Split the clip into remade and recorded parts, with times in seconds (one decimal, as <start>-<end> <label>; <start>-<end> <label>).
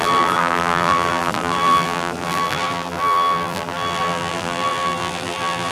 0.0-5.7 remade